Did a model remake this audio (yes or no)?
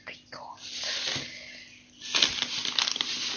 no